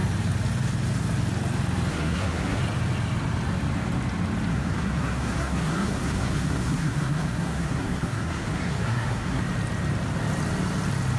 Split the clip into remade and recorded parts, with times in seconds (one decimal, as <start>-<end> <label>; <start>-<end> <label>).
0.0-1.9 recorded; 1.9-2.6 remade; 2.6-4.5 recorded; 4.5-9.4 remade; 9.4-11.2 recorded